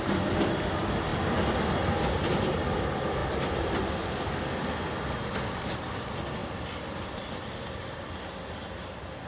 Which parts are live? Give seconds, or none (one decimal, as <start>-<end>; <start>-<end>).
0.0-9.3